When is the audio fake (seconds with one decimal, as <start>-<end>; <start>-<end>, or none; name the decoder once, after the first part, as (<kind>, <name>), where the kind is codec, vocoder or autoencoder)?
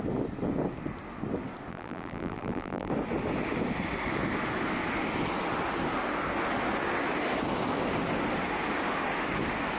1.7-2.9 (vocoder, BigVGAN v2)